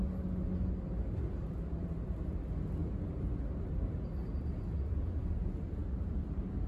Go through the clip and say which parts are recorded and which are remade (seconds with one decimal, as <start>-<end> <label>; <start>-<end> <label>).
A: 0.0-2.8 recorded; 2.8-4.0 remade; 4.0-5.8 recorded; 5.8-6.7 remade